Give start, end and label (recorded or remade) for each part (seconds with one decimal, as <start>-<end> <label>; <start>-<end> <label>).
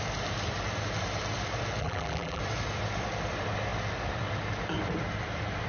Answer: 0.0-1.8 recorded; 1.8-2.4 remade; 2.4-5.7 recorded